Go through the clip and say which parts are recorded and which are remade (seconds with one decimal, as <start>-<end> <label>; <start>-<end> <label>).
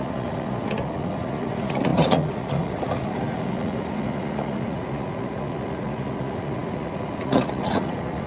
0.0-8.3 remade